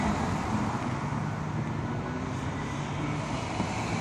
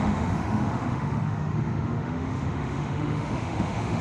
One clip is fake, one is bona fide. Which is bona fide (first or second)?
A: first